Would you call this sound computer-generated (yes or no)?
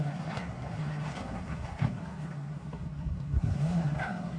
yes